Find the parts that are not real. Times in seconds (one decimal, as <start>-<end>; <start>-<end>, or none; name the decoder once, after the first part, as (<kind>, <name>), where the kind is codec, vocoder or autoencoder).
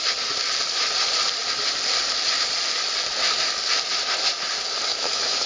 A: 4.9-5.5 (autoencoder, DAC-VAE)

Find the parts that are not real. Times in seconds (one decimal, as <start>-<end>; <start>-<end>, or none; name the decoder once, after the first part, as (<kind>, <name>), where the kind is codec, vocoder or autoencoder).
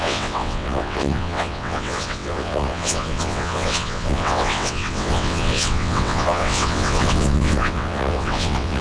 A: 0.0-8.8 (vocoder, WaveNeXt)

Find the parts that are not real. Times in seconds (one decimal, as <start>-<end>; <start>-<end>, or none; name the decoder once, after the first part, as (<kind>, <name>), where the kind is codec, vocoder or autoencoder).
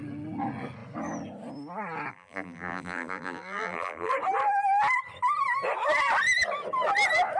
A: 2.1-4.1 (vocoder, BigVGAN v2)